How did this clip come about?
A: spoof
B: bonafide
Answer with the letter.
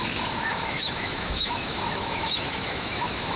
A